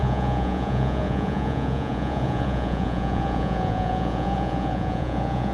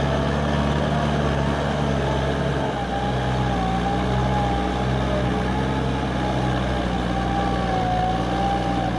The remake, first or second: first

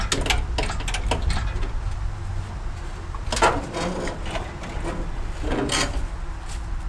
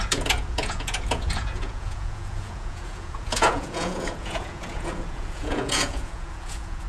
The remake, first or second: second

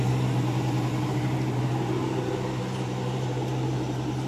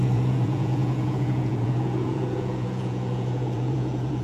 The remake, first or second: second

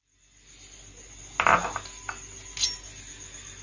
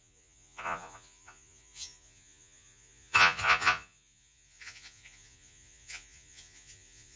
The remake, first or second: second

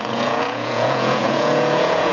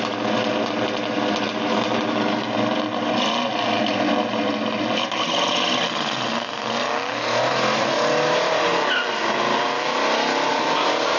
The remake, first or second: first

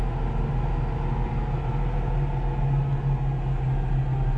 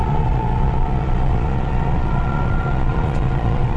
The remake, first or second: second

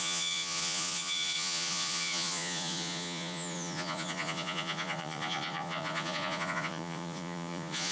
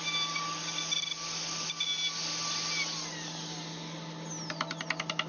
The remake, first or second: first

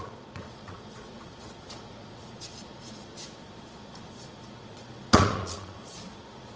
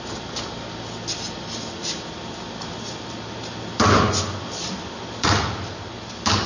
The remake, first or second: first